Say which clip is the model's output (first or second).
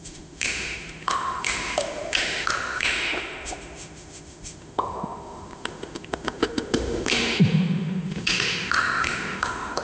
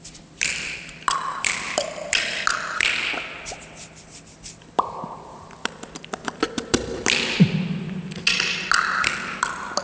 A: first